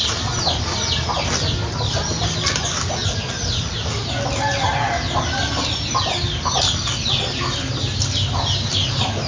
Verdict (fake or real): real